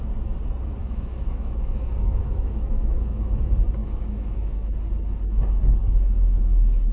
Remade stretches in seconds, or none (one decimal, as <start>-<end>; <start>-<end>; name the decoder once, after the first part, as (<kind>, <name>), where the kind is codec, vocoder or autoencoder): 0.8-3.4 (autoencoder, DAC-VAE); 3.8-4.7